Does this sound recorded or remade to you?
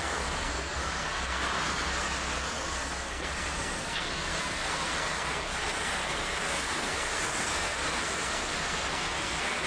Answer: remade